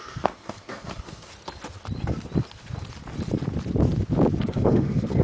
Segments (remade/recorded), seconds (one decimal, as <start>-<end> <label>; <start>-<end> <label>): 0.0-1.3 remade; 1.3-4.4 recorded; 4.4-5.2 remade